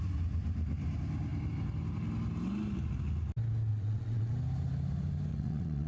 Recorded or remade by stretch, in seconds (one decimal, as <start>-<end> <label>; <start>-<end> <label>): 0.0-3.7 recorded; 3.7-4.3 remade; 4.3-5.3 recorded; 5.3-5.9 remade